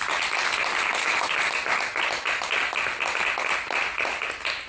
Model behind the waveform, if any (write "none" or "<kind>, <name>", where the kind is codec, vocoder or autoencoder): none